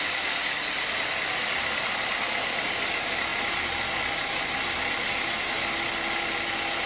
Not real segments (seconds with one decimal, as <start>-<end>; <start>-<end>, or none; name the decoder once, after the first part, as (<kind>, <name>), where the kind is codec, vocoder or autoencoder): none